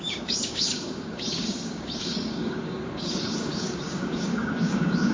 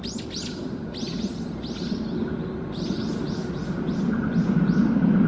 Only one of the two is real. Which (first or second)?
second